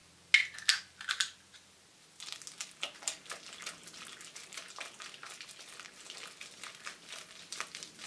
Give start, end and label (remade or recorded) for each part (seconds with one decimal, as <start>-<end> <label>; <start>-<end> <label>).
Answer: 0.0-8.1 recorded